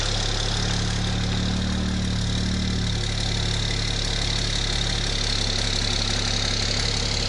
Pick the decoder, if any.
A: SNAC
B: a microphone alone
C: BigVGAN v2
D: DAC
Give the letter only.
B